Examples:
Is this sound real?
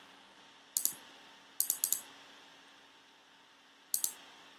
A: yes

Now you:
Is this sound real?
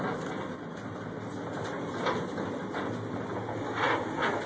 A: yes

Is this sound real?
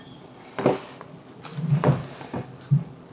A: yes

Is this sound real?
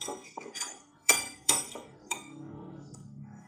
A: no